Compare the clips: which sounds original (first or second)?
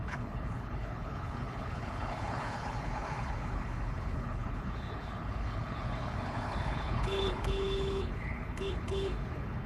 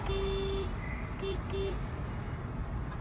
second